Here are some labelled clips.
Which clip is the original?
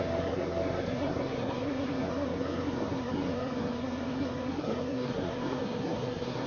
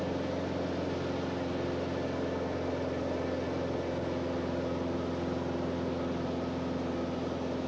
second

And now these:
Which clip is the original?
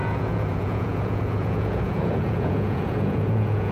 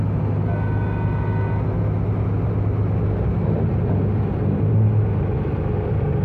second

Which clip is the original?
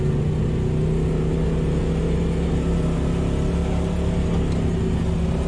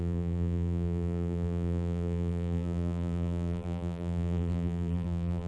first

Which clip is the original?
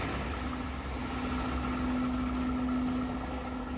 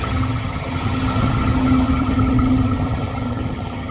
first